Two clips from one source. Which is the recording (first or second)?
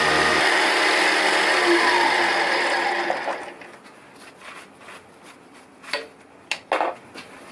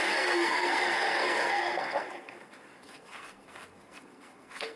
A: first